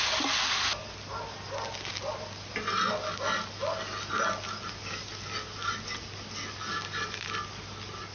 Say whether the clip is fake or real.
real